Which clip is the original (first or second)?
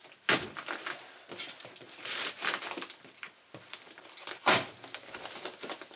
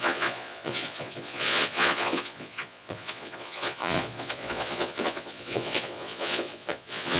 first